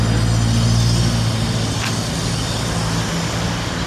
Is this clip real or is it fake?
real